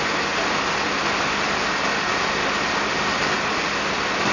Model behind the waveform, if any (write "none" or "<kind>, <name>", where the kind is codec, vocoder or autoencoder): none